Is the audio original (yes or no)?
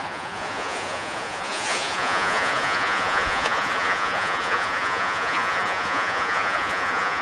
no